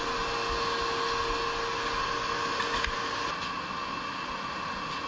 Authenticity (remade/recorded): recorded